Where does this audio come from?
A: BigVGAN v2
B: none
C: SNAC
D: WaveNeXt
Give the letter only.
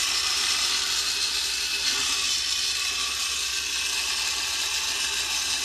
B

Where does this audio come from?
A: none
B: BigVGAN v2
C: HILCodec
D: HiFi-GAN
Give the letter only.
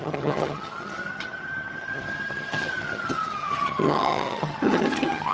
D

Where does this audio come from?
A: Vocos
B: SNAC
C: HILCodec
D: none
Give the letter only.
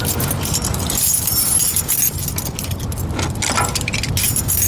D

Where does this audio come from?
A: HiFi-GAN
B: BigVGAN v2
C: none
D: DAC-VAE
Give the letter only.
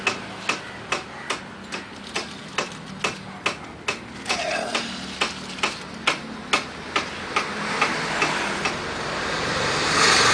C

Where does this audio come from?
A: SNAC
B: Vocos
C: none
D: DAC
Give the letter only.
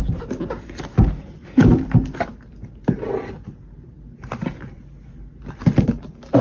C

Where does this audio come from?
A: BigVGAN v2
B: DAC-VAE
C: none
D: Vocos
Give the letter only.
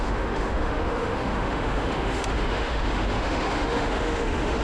B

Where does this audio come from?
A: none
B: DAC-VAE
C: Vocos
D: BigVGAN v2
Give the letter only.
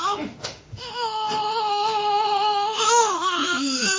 B